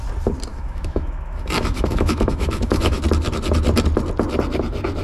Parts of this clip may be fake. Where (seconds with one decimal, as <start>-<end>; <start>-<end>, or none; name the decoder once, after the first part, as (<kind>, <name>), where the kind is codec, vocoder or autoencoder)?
0.5-3.0 (autoencoder, DAC-VAE)